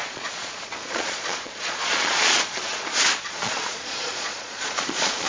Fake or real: fake